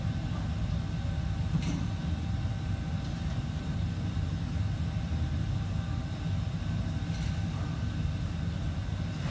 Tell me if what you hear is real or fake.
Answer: real